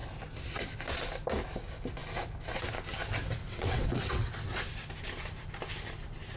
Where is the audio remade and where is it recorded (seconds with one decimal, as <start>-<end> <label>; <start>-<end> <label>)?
0.0-3.4 recorded; 3.4-4.3 remade; 4.3-6.4 recorded